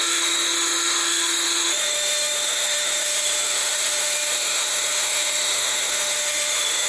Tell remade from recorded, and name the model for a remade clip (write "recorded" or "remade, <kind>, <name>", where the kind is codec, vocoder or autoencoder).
remade, autoencoder, DAC-VAE